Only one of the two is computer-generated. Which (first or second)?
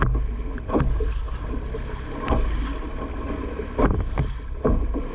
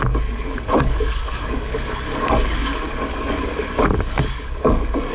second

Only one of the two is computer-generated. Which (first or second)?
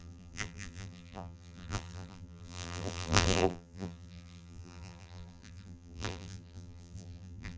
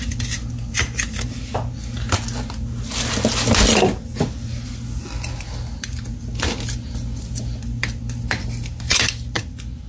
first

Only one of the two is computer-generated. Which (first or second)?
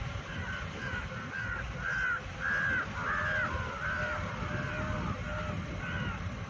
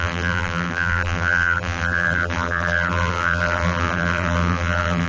second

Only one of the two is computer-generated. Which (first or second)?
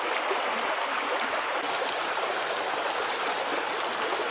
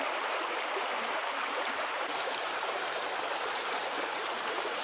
second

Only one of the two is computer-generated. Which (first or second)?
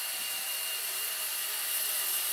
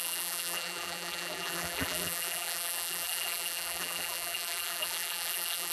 second